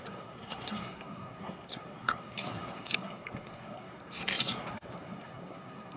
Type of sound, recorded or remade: remade